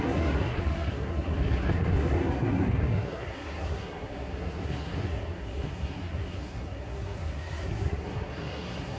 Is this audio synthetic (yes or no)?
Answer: yes